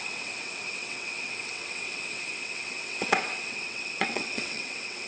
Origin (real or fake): fake